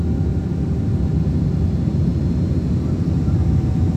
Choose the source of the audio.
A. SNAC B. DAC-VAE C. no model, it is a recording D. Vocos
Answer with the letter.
C